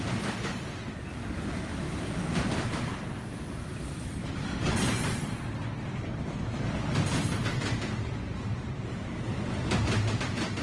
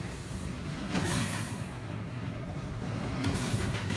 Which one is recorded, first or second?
first